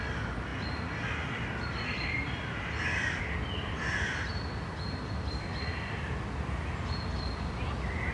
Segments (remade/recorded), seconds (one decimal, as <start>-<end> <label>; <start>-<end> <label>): 0.0-3.6 recorded; 3.6-6.0 remade; 6.0-8.1 recorded